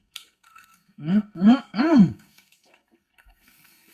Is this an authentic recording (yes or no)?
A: no